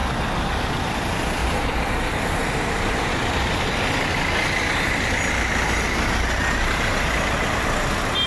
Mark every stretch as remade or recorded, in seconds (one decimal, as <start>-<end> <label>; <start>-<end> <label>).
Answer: 0.0-1.4 recorded; 1.4-4.9 remade; 4.9-8.3 recorded